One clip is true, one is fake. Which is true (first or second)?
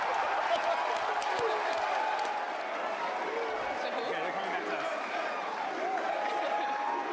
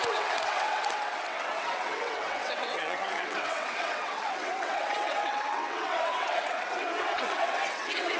first